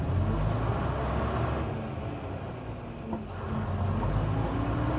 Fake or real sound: real